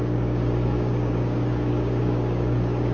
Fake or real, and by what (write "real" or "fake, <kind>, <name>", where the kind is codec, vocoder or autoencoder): fake, codec, DAC